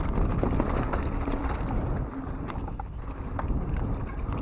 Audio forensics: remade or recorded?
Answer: recorded